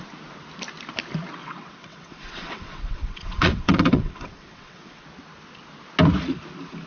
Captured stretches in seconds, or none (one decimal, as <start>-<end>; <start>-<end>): 0.0-1.4; 5.0-6.9